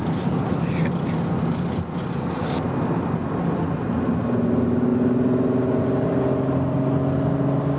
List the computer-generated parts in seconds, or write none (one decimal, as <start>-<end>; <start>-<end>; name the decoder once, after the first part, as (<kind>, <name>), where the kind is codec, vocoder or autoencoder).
none